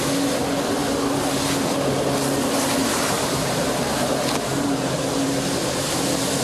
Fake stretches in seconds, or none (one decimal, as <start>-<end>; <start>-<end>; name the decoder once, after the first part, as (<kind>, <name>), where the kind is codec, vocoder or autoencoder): 2.8-5.9 (vocoder, BigVGAN v2)